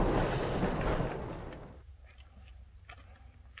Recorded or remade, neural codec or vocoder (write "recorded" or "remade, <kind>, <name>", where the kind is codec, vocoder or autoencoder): recorded